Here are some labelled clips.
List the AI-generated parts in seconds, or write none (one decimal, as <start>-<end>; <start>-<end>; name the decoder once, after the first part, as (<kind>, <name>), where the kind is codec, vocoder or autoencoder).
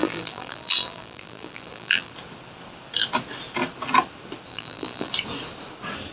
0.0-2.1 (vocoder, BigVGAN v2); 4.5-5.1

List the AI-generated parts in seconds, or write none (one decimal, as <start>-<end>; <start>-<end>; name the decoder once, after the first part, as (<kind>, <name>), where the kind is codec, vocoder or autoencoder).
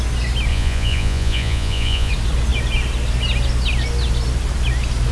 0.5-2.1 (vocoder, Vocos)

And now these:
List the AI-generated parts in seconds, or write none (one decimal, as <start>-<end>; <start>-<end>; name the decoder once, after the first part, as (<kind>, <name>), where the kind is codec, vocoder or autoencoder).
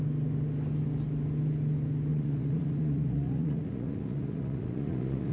2.1-5.3 (vocoder, Vocos)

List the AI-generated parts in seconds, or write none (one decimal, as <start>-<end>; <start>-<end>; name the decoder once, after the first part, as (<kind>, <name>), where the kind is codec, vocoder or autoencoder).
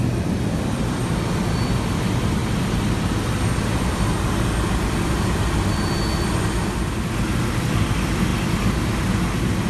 none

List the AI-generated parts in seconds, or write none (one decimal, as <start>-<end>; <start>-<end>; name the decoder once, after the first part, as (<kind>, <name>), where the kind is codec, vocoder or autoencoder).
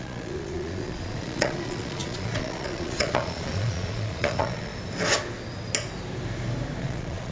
0.0-4.7 (vocoder, Vocos); 6.8-7.3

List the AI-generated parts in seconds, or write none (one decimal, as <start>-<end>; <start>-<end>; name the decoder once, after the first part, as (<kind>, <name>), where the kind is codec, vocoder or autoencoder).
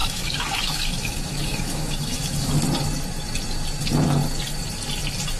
0.0-2.5 (autoencoder, DAC-VAE)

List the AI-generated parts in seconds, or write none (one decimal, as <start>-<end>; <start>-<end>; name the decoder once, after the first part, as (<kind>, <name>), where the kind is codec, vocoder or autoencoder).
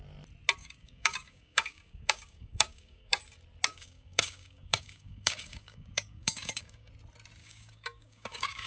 0.6-3.2 (codec, DAC); 3.7-6.9; 7.4-8.7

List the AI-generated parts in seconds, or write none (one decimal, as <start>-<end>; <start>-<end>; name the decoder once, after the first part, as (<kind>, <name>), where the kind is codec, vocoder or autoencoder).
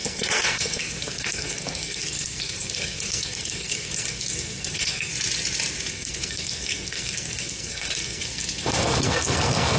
0.0-5.1 (codec, SNAC); 5.9-9.8